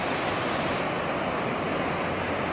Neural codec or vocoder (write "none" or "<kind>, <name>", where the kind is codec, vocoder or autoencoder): vocoder, BigVGAN v2